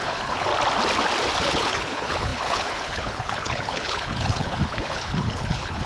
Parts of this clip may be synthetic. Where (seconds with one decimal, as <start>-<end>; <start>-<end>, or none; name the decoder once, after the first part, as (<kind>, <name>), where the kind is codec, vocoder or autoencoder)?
0.0-0.5 (codec, HILCodec); 1.4-5.9